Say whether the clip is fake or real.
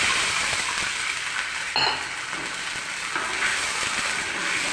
real